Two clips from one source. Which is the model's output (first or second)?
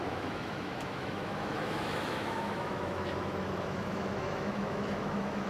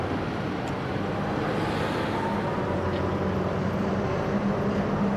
first